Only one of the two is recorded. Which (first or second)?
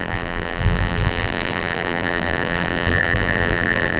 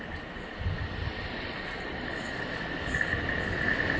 second